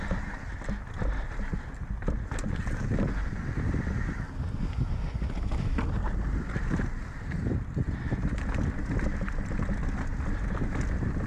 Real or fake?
real